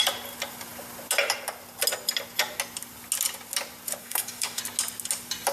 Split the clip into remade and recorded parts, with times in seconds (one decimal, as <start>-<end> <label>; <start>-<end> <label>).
0.0-4.0 recorded; 4.0-4.6 remade; 4.6-5.5 recorded